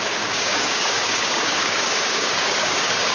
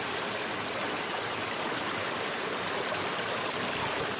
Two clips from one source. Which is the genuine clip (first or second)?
second